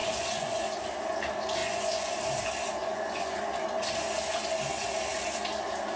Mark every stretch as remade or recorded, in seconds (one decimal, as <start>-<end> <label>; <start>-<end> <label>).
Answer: 0.0-0.6 remade; 0.6-1.6 recorded; 1.6-2.2 remade; 2.2-2.8 recorded; 2.8-3.4 remade; 3.4-6.0 recorded